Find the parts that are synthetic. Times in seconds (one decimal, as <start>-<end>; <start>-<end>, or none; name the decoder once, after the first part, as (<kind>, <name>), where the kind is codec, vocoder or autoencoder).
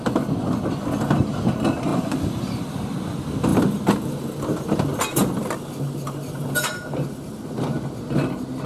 none